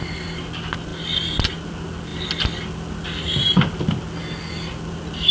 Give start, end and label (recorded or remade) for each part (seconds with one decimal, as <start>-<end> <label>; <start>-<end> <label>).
0.0-5.3 recorded